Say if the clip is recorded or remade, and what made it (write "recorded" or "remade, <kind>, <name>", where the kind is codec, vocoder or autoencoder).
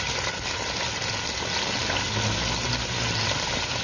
recorded